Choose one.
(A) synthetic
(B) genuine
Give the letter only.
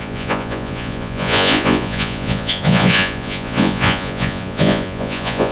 A